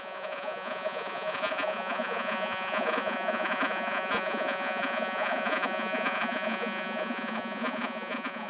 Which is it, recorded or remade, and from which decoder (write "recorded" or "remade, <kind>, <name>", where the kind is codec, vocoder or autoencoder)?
remade, vocoder, Vocos